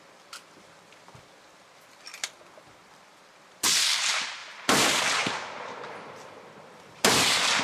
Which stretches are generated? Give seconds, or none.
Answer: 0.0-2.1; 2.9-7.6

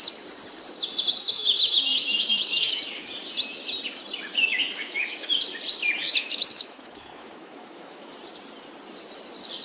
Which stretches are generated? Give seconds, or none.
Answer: 1.2-2.8; 4.3-5.4; 6.0-8.1

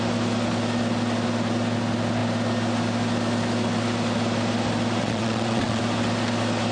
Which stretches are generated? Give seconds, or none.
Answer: 5.0-5.8